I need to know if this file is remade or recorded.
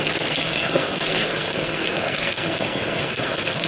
remade